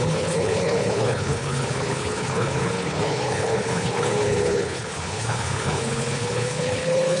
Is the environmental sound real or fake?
fake